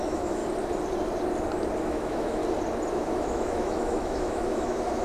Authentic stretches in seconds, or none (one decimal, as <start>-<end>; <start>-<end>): 0.4-1.8; 2.4-2.9